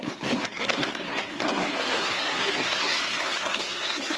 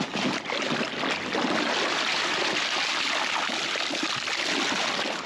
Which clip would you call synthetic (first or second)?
first